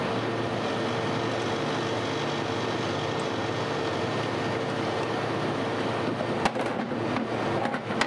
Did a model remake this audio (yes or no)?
no